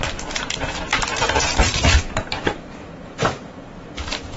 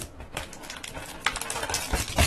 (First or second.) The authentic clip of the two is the second